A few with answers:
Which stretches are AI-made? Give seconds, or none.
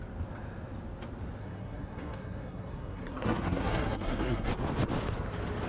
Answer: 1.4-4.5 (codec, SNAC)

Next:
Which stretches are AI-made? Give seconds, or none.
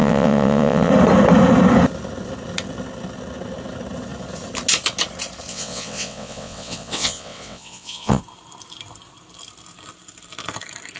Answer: 0.0-0.9 (vocoder, WaveNeXt); 5.5-8.2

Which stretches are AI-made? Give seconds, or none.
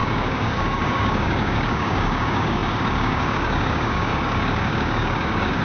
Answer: 0.0-5.6 (codec, DAC)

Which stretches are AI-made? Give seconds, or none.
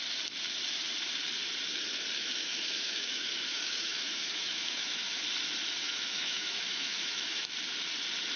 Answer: 2.2-5.2 (autoencoder, DAC-VAE); 5.8-7.5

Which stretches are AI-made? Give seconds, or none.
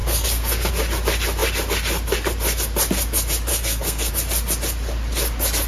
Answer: 0.0-0.7 (codec, SNAC); 3.5-4.1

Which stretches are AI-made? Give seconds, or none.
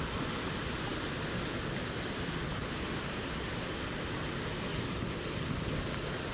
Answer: none